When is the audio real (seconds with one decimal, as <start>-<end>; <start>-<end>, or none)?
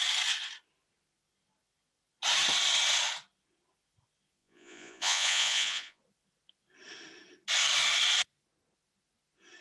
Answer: 0.0-4.4; 6.0-9.6